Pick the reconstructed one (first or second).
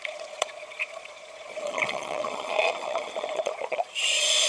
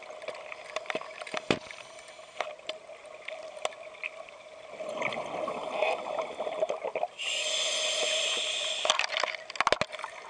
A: first